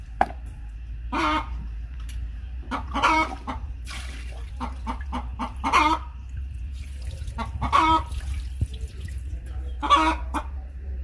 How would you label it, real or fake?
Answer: fake